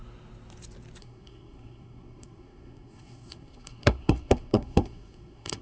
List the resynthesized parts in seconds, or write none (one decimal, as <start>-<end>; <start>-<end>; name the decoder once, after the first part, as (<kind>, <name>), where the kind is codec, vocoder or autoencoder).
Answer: 1.0-5.6 (codec, SNAC)